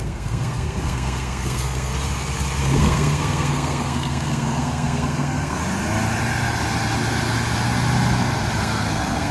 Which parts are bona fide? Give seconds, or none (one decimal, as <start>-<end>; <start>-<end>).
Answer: 1.9-2.6; 5.6-8.6